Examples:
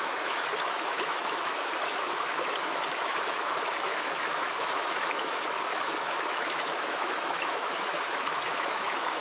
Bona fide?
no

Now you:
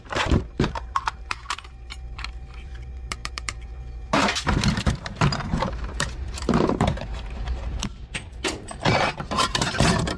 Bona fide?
no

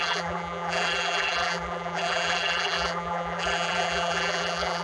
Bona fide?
no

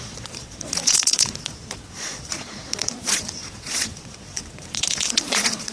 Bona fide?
no